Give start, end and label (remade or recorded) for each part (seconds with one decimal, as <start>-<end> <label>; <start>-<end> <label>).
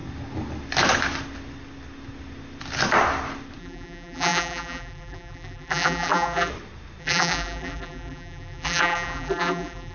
0.0-3.6 recorded; 3.6-6.5 remade; 6.5-7.0 recorded; 7.0-9.9 remade